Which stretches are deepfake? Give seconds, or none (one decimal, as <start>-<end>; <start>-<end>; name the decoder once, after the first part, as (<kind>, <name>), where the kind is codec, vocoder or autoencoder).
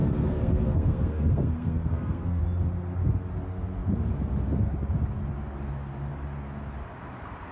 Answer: 0.0-2.4 (codec, SNAC)